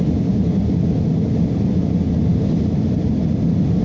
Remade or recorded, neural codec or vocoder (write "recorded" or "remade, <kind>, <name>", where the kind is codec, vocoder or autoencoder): recorded